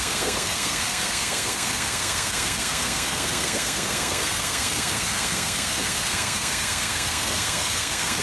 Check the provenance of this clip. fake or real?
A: fake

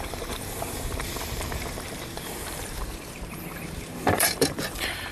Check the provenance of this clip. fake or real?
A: fake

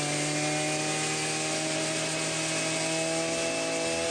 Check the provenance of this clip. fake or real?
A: real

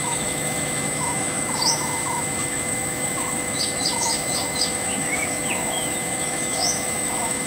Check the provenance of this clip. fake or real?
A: fake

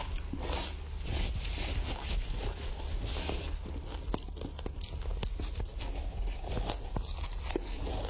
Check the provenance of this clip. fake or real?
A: real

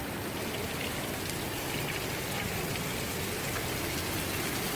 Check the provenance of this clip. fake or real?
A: real